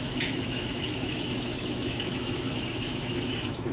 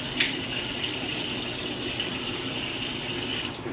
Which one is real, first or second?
second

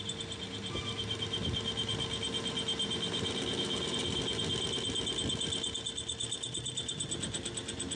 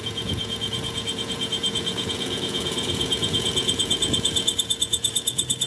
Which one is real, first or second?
first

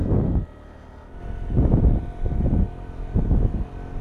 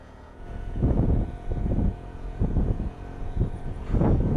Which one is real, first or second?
first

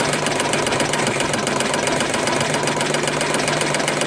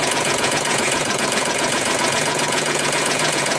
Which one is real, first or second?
first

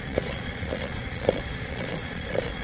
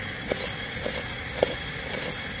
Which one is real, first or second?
second